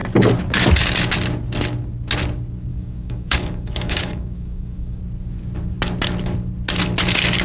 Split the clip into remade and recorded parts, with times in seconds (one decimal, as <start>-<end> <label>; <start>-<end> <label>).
0.0-2.7 recorded; 2.7-5.0 remade; 5.0-7.4 recorded